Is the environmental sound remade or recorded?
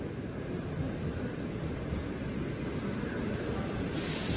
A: recorded